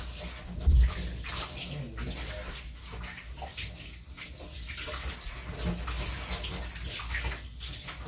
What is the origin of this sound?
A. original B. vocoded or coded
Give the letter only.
A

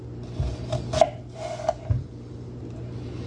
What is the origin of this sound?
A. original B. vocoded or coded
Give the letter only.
A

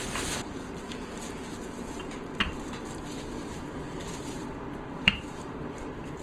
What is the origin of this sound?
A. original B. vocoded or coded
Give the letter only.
B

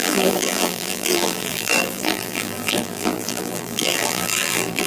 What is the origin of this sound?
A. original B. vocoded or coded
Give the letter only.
B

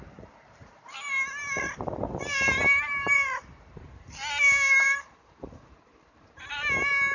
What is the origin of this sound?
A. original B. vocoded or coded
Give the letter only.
B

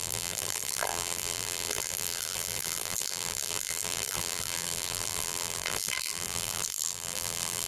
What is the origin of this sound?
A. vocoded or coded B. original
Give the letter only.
A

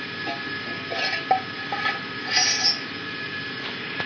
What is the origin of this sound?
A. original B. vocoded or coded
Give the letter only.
A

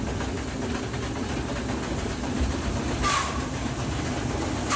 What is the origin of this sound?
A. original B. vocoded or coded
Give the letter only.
A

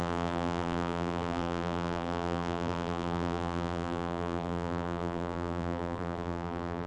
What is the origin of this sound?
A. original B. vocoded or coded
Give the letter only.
B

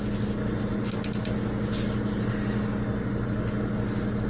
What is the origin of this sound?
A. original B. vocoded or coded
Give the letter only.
A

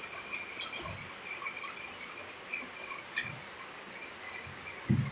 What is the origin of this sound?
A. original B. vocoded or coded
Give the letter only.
A